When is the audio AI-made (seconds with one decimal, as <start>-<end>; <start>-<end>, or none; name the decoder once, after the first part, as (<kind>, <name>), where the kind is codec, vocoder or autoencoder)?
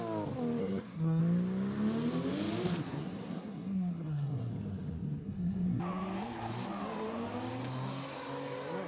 0.6-1.2 (codec, SNAC); 2.8-4.5; 5.2-5.8